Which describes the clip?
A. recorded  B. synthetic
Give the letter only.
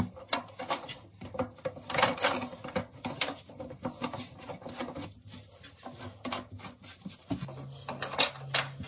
A